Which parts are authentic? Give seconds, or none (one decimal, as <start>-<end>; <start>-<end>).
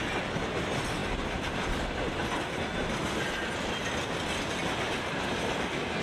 0.0-6.0